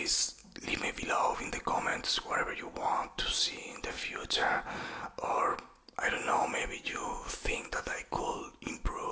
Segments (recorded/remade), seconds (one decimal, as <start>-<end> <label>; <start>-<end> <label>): 0.0-6.9 recorded; 6.9-8.4 remade; 8.4-9.1 recorded